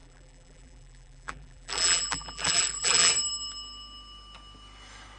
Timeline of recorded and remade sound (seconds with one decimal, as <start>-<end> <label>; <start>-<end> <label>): 0.0-3.1 remade; 3.1-5.2 recorded